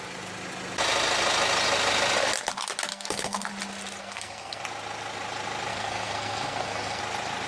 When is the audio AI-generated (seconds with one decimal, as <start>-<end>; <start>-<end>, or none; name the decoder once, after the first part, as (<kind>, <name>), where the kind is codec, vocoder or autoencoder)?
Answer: 2.9-3.5 (codec, SNAC); 4.0-4.6; 5.7-7.0